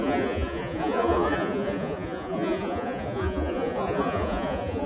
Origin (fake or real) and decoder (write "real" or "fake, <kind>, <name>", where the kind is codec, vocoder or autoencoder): fake, vocoder, Vocos